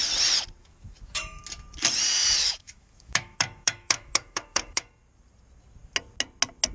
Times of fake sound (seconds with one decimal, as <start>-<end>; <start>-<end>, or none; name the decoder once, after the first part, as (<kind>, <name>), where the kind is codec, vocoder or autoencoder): 0.6-1.4 (autoencoder, DAC-VAE); 2.4-4.9